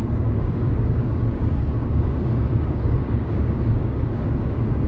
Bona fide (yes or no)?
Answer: no